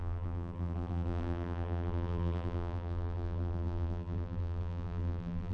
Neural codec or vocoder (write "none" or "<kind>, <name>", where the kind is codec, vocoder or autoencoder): vocoder, BigVGAN v2